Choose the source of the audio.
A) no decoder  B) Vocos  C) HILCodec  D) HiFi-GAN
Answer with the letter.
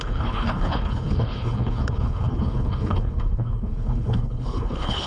C